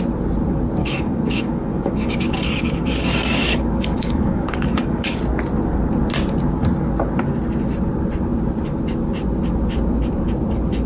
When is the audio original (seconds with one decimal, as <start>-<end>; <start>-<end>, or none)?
0.0-0.8; 5.2-10.9